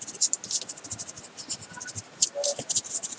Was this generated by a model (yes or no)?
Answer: no